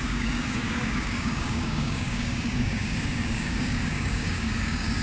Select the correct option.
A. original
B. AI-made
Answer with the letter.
B